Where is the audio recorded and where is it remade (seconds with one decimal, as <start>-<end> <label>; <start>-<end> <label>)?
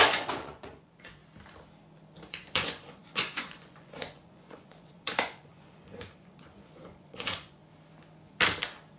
0.0-1.2 remade; 1.2-2.3 recorded; 2.3-7.6 remade; 7.6-9.0 recorded